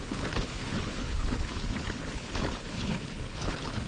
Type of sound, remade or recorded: remade